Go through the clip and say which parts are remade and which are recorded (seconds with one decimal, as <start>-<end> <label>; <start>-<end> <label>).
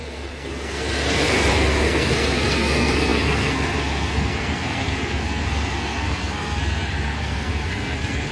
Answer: 0.0-8.3 remade